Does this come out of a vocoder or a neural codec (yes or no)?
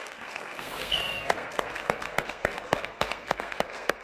yes